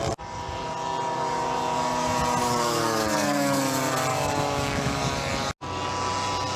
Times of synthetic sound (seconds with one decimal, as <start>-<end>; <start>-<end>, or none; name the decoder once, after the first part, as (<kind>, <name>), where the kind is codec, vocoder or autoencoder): 2.4-3.6 (codec, DAC); 4.1-5.0